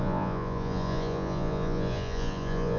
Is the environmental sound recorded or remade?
remade